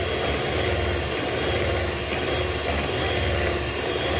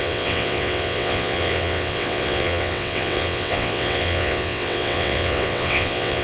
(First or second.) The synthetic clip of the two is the second